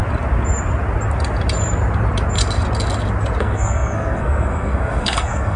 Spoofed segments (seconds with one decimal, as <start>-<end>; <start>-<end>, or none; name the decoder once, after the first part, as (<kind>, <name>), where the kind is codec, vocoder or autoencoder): 3.4-5.6 (codec, SNAC)